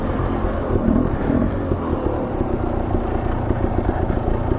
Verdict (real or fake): real